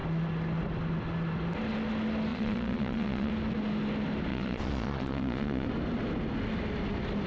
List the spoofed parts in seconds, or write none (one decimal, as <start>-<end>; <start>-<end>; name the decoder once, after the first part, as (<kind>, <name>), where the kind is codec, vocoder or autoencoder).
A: 2.3-3.3 (vocoder, Vocos); 4.3-5.7